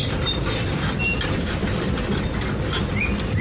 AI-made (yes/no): no